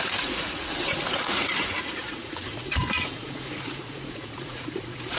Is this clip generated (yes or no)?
yes